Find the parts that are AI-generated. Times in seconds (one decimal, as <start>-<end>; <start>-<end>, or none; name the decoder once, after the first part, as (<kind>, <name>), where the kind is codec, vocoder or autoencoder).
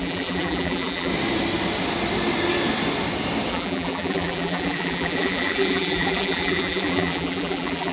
0.0-1.1 (vocoder, BigVGAN v2); 3.5-7.9